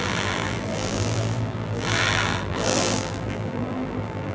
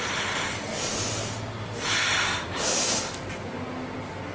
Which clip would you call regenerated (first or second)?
first